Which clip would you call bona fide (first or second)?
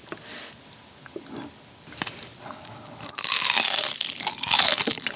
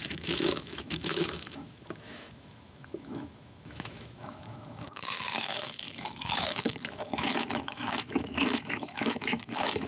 first